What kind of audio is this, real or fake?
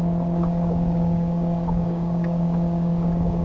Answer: fake